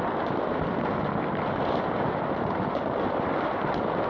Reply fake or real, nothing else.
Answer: real